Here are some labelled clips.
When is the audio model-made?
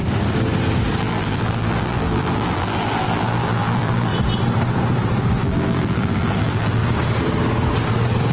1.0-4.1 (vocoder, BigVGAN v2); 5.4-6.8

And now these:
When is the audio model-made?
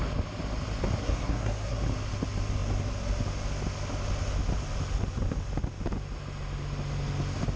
1.0-1.8 (codec, SNAC)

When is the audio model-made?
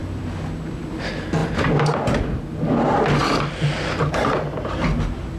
1.4-2.4 (vocoder, BigVGAN v2); 3.2-4.7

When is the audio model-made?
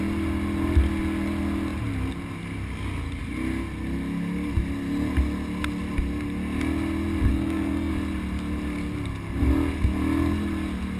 7.3-7.9 (codec, SNAC)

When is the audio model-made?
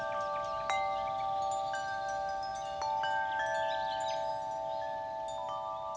none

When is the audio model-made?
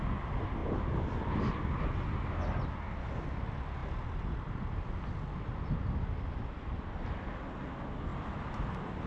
none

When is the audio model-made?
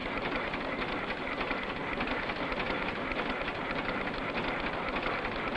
none